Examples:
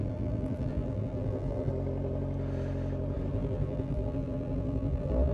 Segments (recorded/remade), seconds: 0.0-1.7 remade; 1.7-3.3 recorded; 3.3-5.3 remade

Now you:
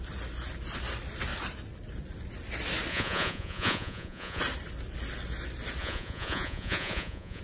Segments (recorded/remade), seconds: 0.0-2.9 recorded; 2.9-4.4 remade; 4.4-5.8 recorded; 5.8-7.4 remade

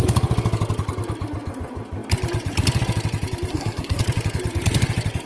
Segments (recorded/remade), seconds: 0.0-3.5 recorded; 3.5-4.0 remade; 4.0-5.3 recorded

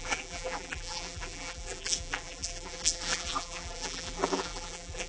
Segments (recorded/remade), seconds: 0.0-5.1 remade

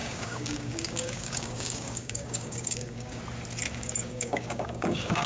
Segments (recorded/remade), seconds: 0.0-3.2 remade; 3.2-3.7 recorded; 3.7-5.3 remade